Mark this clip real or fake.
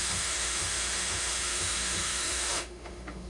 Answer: fake